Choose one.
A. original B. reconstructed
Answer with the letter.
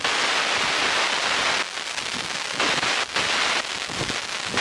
A